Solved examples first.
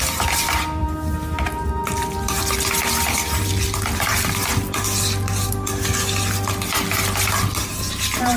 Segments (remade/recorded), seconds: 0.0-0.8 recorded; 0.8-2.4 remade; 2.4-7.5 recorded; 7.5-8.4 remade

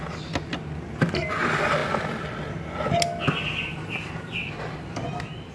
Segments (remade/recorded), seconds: 0.0-5.5 recorded